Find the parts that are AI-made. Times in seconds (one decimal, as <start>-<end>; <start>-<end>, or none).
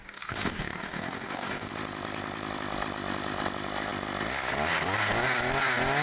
0.0-1.7